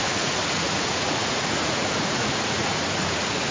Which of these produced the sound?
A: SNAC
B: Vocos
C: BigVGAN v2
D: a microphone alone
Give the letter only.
B